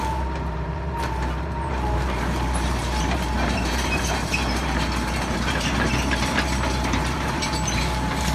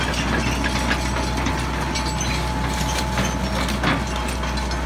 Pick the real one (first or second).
second